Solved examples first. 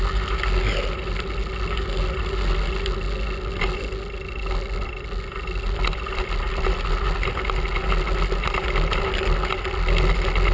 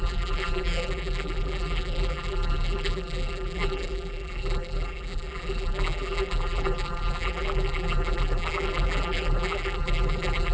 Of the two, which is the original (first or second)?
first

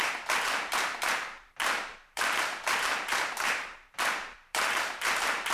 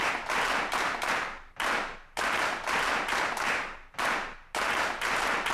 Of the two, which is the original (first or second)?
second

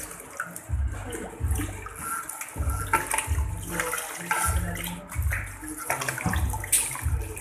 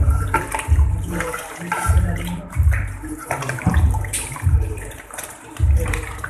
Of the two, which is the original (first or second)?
first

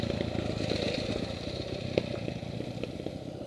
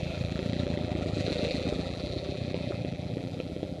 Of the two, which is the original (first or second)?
first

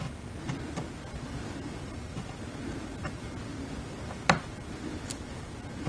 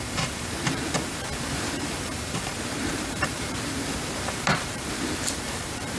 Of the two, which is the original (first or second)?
first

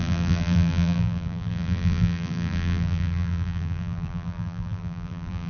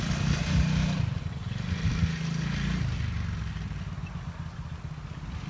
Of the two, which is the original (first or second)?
second